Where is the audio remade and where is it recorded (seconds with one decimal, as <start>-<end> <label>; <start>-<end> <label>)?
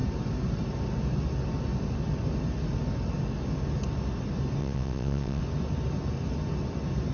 0.0-4.6 recorded; 4.6-5.4 remade; 5.4-7.1 recorded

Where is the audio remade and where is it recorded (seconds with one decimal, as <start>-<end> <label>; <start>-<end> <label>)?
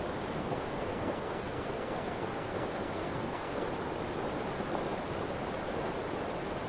0.0-0.4 recorded; 0.4-3.7 remade; 3.7-6.7 recorded